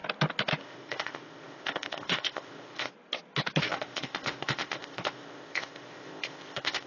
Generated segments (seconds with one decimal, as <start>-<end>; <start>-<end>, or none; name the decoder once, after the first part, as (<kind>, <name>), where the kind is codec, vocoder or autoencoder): 0.6-2.9 (codec, ZipCodec); 3.6-6.9